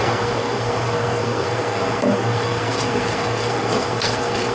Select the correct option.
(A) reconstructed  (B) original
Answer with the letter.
A